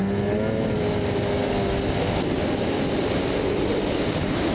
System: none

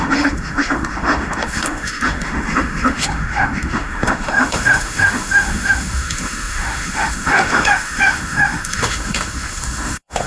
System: autoencoder, DAC-VAE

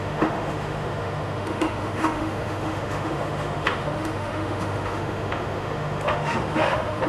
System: autoencoder, DAC-VAE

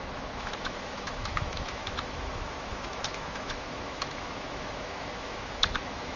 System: autoencoder, DAC-VAE